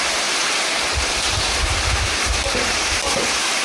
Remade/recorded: remade